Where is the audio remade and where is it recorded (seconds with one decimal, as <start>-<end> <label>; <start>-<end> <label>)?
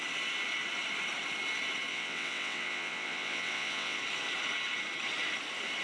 0.0-1.9 recorded; 1.9-4.0 remade; 4.0-5.8 recorded